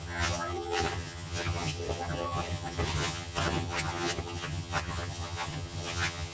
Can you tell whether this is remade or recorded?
remade